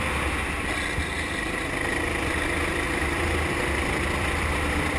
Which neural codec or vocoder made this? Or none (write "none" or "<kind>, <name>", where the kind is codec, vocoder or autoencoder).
none